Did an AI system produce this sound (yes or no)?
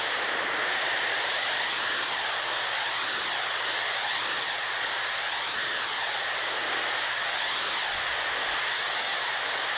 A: no